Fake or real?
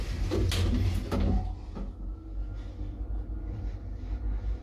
real